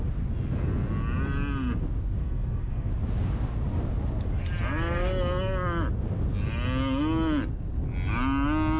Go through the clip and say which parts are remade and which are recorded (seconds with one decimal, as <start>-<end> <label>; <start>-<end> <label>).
0.0-2.2 recorded; 2.2-2.9 remade; 2.9-8.8 recorded